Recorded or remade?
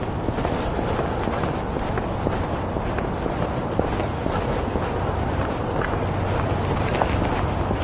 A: recorded